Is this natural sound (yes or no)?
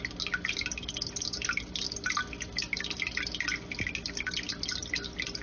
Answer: yes